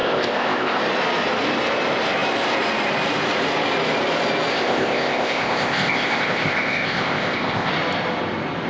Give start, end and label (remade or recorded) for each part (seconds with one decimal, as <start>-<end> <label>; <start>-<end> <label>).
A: 0.0-0.8 remade; 0.8-4.5 recorded; 4.5-7.7 remade; 7.7-8.7 recorded